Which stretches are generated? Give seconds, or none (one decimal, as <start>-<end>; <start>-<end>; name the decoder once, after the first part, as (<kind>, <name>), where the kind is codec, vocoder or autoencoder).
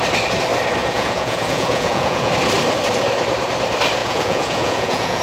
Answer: 0.8-2.3 (vocoder, Vocos); 4.0-5.2